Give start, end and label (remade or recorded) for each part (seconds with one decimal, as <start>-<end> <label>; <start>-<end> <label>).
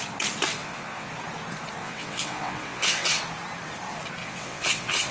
0.0-0.5 recorded; 0.5-1.1 remade; 1.1-1.8 recorded; 1.8-3.2 remade; 3.2-4.2 recorded; 4.2-5.1 remade